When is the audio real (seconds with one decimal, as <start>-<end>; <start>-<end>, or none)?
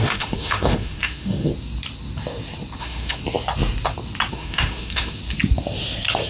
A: 1.5-2.8; 3.2-4.3; 5.2-6.3